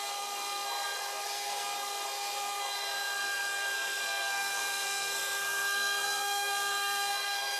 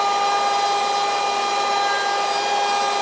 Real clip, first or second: second